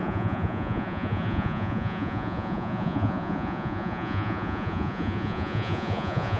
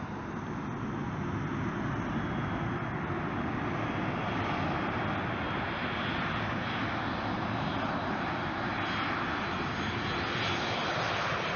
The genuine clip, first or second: second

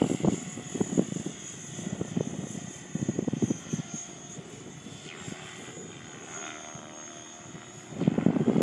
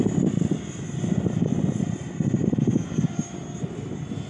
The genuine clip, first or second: second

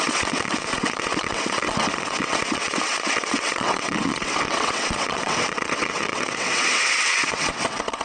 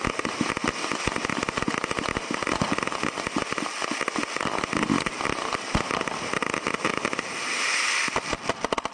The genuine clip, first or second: second